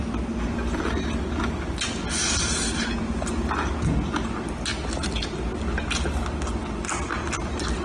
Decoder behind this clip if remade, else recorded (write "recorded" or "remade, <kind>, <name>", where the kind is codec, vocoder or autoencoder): recorded